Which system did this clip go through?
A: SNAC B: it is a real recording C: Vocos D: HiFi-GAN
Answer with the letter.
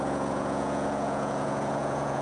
C